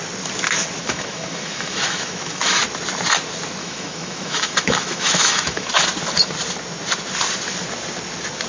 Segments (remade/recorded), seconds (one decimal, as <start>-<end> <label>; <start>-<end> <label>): 0.0-0.8 recorded; 0.8-2.6 remade; 2.6-3.6 recorded; 3.6-5.7 remade; 5.7-8.5 recorded